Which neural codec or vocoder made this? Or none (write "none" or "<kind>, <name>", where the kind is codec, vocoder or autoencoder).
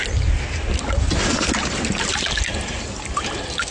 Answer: none